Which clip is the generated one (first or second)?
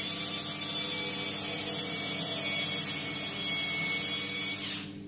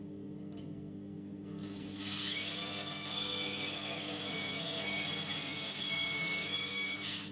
second